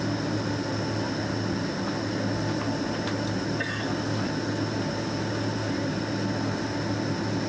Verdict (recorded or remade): recorded